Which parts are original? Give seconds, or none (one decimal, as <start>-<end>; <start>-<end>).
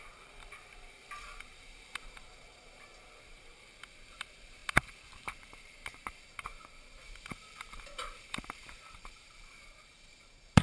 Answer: none